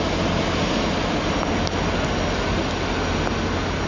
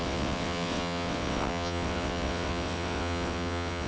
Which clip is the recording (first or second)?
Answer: first